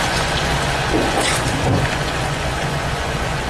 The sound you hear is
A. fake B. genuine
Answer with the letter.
A